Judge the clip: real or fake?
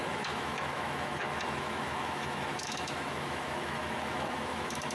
fake